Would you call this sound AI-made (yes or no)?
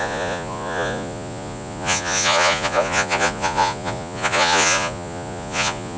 yes